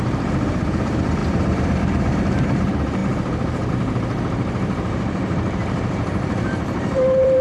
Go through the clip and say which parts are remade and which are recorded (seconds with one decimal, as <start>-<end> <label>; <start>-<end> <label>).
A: 0.0-7.4 remade